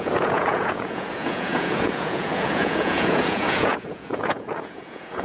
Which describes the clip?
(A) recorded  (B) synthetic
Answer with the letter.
B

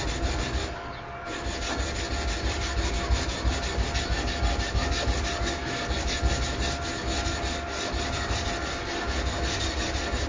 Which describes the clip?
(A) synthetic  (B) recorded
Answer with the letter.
B